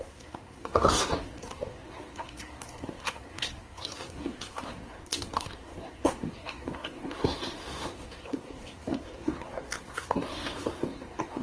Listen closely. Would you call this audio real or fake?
fake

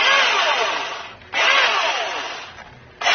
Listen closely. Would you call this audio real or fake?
real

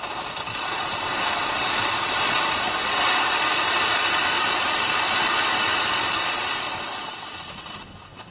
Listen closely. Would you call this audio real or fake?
fake